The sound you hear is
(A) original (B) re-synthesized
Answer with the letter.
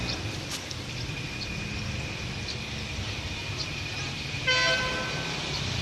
A